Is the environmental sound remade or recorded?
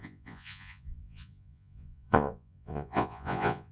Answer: remade